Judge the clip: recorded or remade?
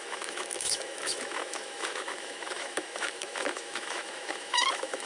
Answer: remade